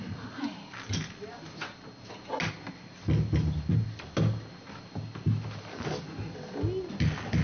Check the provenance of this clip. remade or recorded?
recorded